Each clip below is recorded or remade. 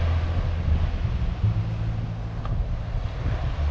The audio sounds recorded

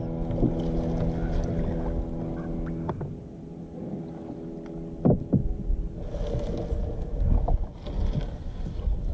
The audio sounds recorded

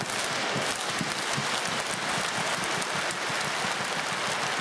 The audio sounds recorded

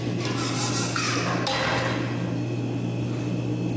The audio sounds recorded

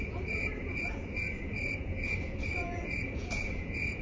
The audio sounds remade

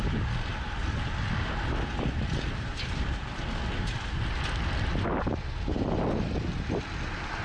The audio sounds recorded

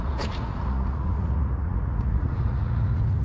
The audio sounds remade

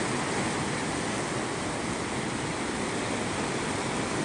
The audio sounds recorded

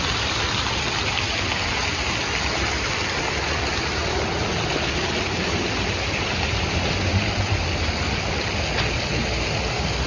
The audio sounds recorded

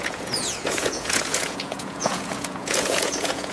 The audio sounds remade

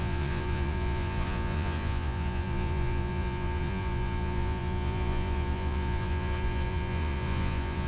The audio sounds remade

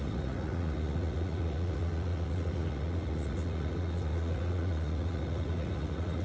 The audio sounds remade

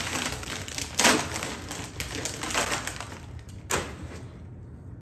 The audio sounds recorded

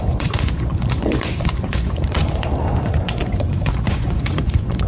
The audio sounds remade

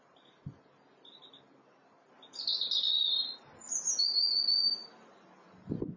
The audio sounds recorded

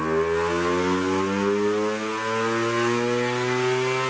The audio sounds recorded